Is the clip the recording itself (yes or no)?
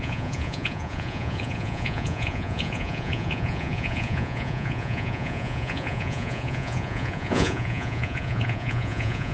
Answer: no